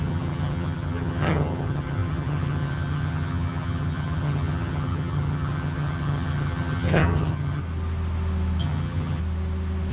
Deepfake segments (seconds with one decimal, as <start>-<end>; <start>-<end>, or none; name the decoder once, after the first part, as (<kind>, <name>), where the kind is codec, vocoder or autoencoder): 0.0-7.6 (vocoder, HiFi-GAN); 8.6-9.2

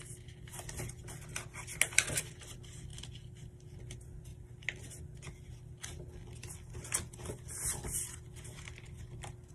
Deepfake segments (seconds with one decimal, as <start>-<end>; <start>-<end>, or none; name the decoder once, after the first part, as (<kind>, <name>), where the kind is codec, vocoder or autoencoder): none